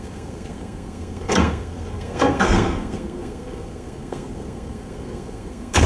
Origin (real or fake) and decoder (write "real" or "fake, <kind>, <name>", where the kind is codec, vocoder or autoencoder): fake, codec, SNAC